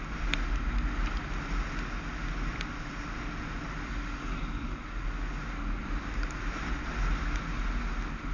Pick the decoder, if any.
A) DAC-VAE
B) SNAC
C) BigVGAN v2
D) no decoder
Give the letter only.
D